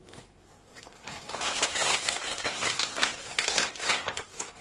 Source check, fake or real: fake